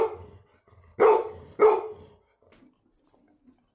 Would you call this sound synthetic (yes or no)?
no